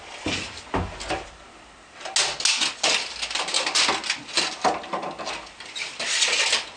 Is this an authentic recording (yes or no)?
yes